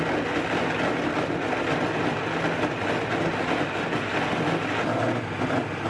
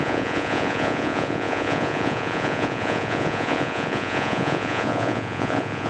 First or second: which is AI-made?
second